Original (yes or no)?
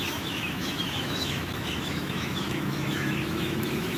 no